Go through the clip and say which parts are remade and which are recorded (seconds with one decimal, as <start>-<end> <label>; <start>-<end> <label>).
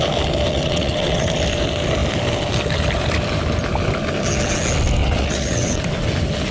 0.0-0.5 recorded; 0.5-1.3 remade; 1.3-5.0 recorded; 5.0-5.8 remade; 5.8-6.5 recorded